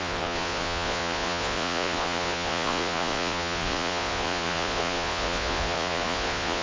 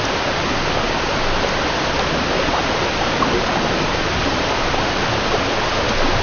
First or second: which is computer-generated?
first